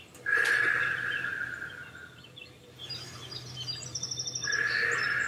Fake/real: real